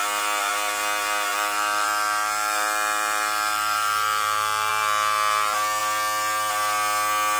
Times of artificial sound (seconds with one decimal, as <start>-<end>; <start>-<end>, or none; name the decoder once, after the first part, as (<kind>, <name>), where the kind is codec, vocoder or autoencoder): 1.3-4.7 (vocoder, BigVGAN v2)